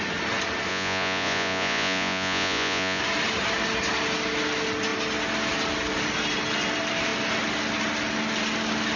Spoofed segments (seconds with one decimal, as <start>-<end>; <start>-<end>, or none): 0.7-3.0